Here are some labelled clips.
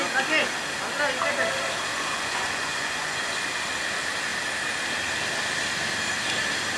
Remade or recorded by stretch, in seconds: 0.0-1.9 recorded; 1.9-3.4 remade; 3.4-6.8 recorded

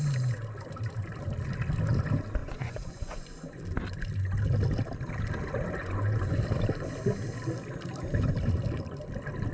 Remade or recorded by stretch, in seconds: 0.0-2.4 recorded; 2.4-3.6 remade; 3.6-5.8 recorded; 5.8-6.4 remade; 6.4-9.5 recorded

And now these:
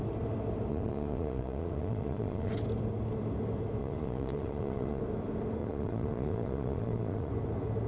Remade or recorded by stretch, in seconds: 0.0-0.7 recorded; 0.7-2.5 remade; 2.5-3.8 recorded; 3.8-5.0 remade; 5.0-5.6 recorded; 5.6-7.3 remade; 7.3-7.9 recorded